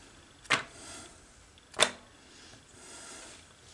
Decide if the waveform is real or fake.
real